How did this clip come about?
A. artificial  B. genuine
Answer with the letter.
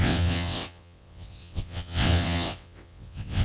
A